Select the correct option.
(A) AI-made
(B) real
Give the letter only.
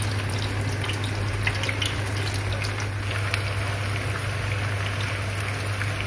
B